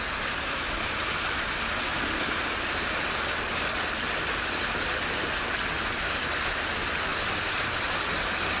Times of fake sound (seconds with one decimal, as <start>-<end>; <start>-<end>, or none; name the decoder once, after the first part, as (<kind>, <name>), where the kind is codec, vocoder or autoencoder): none